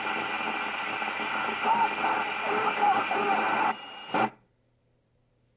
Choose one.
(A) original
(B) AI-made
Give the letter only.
A